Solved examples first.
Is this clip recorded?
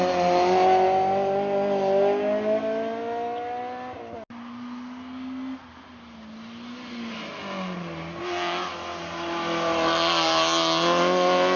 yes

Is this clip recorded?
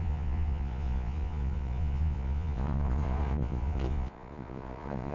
no